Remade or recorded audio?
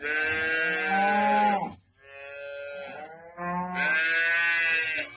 recorded